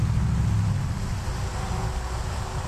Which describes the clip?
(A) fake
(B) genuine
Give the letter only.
B